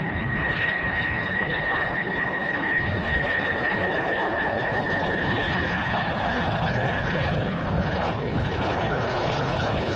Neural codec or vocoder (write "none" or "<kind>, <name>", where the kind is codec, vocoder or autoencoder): codec, HILCodec